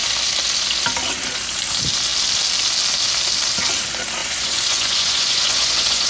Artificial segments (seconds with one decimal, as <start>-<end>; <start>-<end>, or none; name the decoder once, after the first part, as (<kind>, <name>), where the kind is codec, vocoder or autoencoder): 4.2-6.1 (vocoder, Vocos)